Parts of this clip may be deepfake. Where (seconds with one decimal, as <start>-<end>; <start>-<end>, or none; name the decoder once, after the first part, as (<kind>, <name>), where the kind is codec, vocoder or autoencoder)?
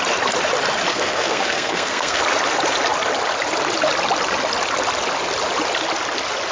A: 0.9-2.2 (codec, SNAC)